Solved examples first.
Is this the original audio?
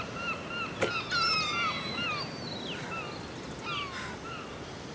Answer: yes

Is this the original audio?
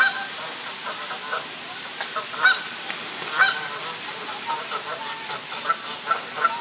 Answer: yes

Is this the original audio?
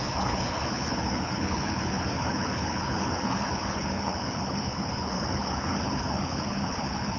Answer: no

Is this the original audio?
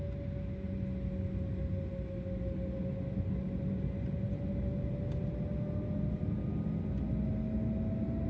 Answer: yes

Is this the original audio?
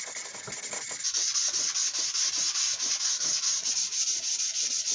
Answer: yes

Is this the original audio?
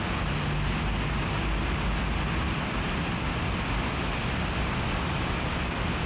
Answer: yes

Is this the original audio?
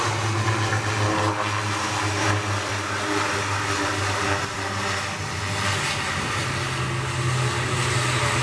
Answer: yes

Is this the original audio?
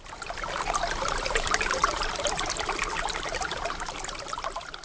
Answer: yes